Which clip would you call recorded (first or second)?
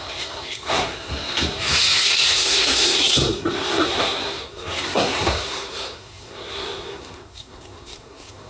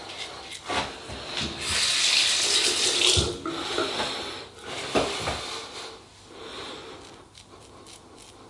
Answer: second